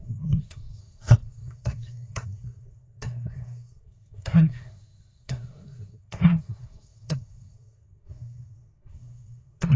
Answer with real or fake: fake